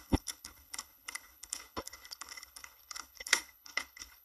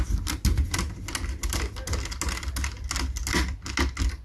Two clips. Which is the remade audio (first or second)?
first